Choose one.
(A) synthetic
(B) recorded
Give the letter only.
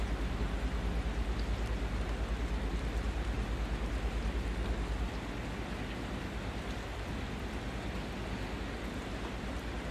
B